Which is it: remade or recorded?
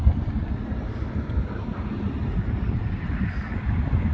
remade